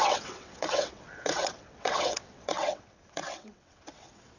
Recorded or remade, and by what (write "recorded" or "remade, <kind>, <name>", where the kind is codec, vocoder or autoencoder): remade, vocoder, WaveNeXt